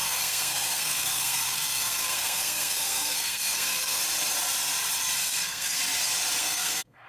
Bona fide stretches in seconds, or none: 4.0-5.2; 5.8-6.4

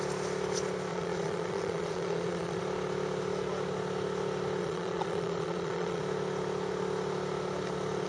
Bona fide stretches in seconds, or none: 0.0-0.9; 2.6-4.6; 6.0-8.1

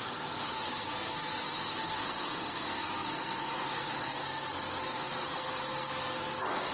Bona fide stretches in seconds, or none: none

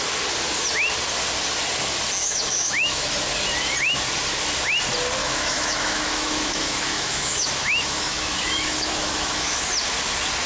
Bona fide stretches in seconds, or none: 0.0-2.2; 3.1-5.2; 9.6-10.5

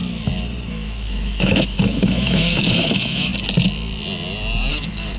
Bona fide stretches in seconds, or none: 0.0-0.7; 3.3-4.7

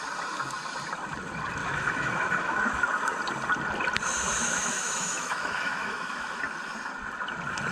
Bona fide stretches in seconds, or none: 0.0-1.6; 2.8-4.5; 6.4-7.7